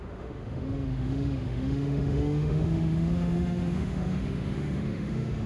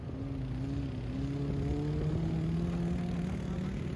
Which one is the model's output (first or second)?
first